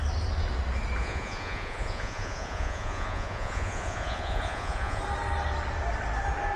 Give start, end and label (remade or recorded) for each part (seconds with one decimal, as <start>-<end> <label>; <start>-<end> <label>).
0.0-1.0 recorded; 1.0-5.0 remade; 5.0-6.6 recorded